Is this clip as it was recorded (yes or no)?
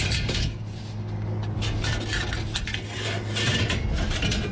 yes